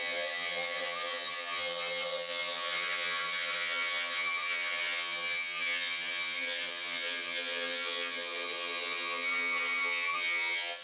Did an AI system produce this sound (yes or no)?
yes